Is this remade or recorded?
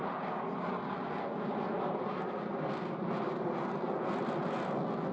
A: recorded